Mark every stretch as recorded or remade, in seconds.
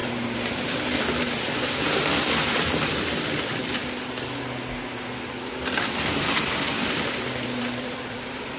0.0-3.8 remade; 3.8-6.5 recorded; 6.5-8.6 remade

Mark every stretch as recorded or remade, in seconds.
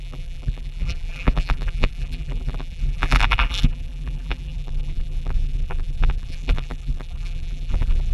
0.0-8.1 remade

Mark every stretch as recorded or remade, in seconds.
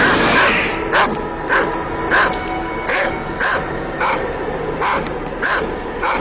0.0-2.9 recorded; 2.9-6.2 remade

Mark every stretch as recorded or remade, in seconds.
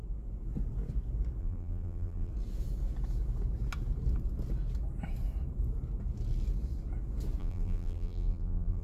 0.0-1.4 recorded; 1.4-2.3 remade; 2.3-7.4 recorded; 7.4-8.8 remade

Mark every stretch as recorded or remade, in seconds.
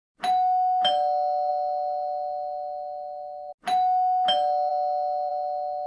0.0-5.9 recorded